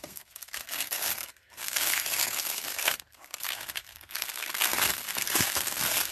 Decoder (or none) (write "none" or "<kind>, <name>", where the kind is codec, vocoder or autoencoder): codec, SNAC